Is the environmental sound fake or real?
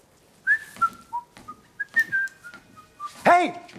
real